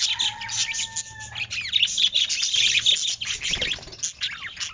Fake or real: real